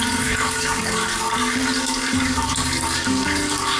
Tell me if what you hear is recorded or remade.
remade